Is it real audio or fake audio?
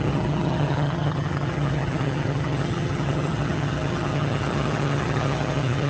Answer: fake